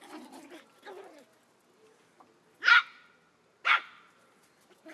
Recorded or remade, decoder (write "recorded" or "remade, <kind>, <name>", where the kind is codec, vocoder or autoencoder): recorded